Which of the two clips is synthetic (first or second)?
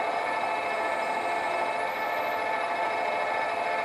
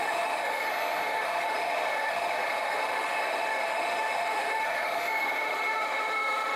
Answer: second